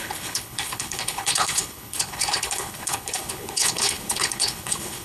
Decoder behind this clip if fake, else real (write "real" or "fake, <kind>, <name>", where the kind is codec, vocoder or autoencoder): fake, codec, HILCodec